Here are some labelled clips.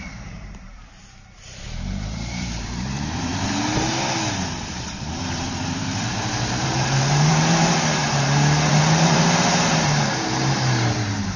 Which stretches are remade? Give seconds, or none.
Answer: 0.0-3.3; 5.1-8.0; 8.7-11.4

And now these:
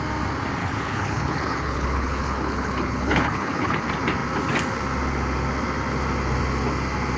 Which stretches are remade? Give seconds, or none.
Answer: 0.6-3.8

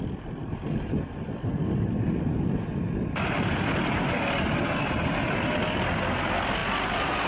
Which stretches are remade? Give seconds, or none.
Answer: none

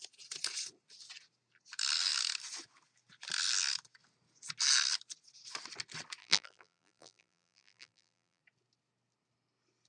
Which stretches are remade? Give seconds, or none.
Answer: 6.2-8.4